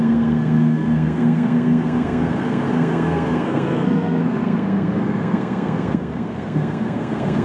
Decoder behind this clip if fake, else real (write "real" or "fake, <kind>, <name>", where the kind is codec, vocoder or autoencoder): fake, codec, SNAC